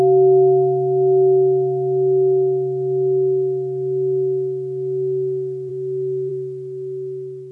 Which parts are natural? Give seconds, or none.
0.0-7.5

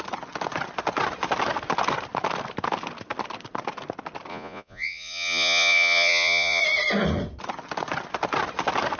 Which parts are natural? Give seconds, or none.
0.0-4.3; 6.6-9.0

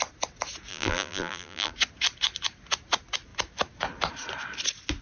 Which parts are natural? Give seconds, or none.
0.0-0.7; 1.7-5.0

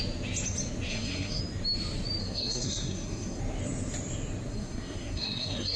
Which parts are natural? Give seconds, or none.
0.0-0.9; 1.4-2.2; 3.4-4.5

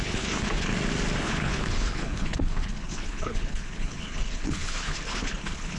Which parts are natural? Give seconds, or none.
0.7-1.2

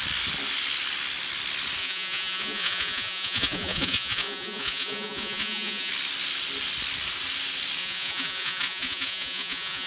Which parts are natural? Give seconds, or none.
0.0-1.8; 5.9-7.8

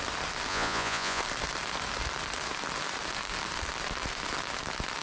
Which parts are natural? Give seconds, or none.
0.0-0.5; 1.2-5.0

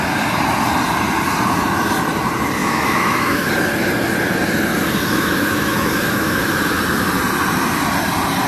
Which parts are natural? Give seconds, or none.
0.0-2.6; 3.5-5.1; 6.8-8.5